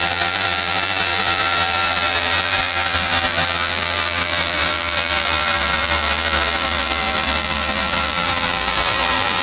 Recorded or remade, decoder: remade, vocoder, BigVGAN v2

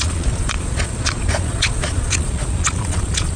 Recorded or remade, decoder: remade, vocoder, Vocos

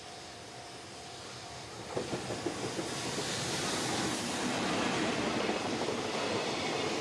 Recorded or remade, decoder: recorded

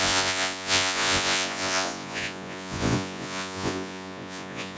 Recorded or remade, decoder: remade, vocoder, Vocos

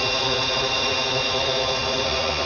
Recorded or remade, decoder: remade, vocoder, Vocos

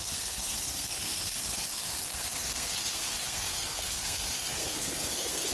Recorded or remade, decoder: remade, codec, SNAC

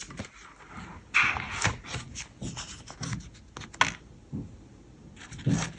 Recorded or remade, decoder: recorded